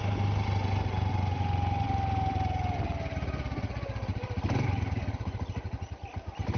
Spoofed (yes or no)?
no